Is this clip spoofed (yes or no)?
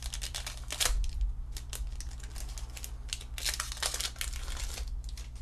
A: no